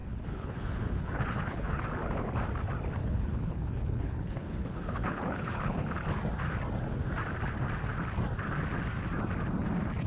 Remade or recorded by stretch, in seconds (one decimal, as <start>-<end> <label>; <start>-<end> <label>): 0.0-1.8 remade; 1.8-3.0 recorded; 3.0-5.9 remade; 5.9-10.1 recorded